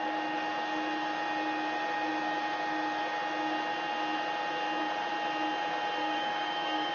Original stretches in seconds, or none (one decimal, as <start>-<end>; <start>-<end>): 0.0-6.0